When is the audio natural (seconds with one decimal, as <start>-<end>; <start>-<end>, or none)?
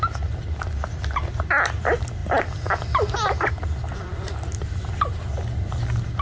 0.0-6.2